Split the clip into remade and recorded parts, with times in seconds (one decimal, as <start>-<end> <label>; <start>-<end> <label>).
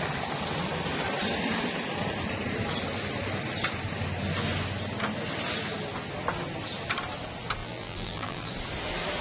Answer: 0.0-7.6 recorded; 7.6-8.5 remade; 8.5-9.2 recorded